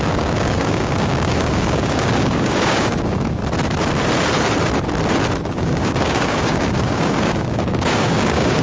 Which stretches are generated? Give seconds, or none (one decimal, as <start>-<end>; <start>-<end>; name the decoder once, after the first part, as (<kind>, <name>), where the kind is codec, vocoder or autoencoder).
0.0-3.4 (codec, DAC); 5.4-8.6